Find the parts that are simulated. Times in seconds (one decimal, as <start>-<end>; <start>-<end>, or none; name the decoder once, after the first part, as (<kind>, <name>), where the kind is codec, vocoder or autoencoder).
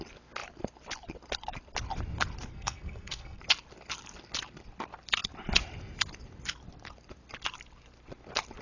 2.5-3.4 (codec, SNAC)